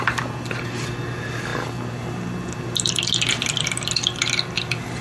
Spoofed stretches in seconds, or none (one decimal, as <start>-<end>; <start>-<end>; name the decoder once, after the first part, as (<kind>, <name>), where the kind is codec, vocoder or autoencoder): none